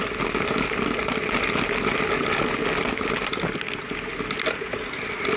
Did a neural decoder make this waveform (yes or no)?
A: no